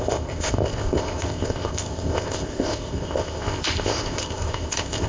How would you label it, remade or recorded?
remade